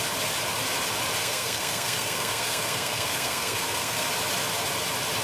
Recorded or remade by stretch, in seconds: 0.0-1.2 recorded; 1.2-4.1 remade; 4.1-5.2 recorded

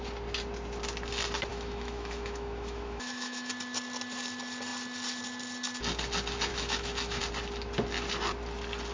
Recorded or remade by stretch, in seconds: 0.0-1.5 recorded; 1.5-3.5 remade; 3.5-6.5 recorded; 6.5-7.2 remade; 7.2-8.9 recorded

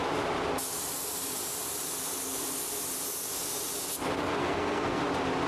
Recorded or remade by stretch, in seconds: 0.0-4.4 recorded; 4.4-5.0 remade; 5.0-5.5 recorded

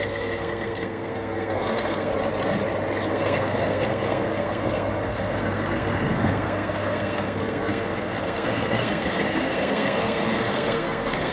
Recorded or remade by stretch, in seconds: 0.0-2.1 remade; 2.1-3.1 recorded; 3.1-11.3 remade